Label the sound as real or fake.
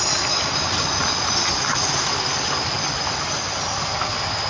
real